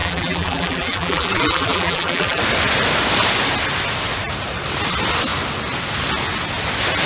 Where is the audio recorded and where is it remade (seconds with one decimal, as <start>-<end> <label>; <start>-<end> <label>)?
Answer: 0.0-2.4 remade; 2.4-7.1 recorded